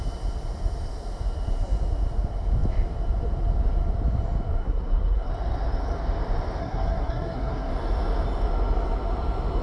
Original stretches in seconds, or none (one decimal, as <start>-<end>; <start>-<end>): 0.0-4.6; 5.3-6.6; 7.7-9.6